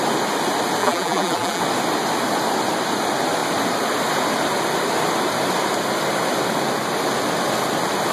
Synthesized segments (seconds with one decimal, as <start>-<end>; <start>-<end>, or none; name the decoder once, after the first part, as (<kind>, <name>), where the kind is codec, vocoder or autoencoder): 0.8-1.6 (vocoder, BigVGAN v2)